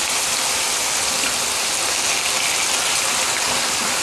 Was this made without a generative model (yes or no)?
yes